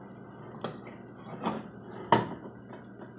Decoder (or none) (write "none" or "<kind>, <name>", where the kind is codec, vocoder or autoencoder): none